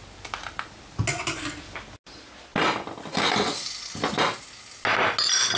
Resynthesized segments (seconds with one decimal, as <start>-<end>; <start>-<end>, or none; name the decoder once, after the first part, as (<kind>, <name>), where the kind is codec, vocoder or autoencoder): none